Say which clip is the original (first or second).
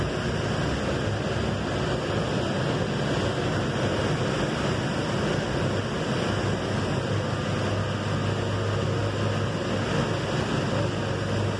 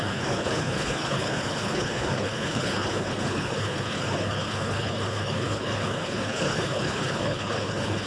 first